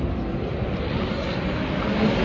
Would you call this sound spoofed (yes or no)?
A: no